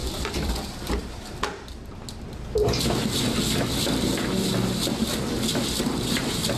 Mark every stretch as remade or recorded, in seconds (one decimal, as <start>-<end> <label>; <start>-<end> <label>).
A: 0.0-0.5 remade; 0.5-6.6 recorded